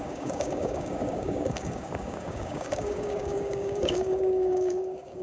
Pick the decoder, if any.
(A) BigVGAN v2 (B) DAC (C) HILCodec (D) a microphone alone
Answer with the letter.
B